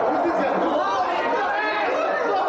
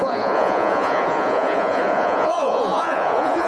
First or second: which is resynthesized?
second